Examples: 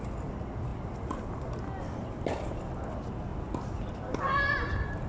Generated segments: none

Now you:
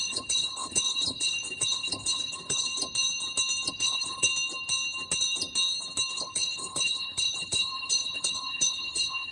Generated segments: 0.0-2.7; 3.7-4.3; 6.1-9.3

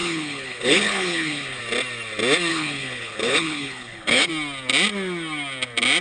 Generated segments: 0.0-1.6; 2.5-4.3

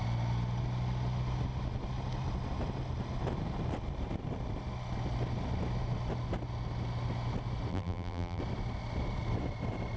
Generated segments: 7.7-8.4

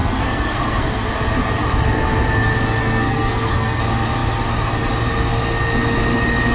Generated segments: 0.0-1.1; 2.8-3.8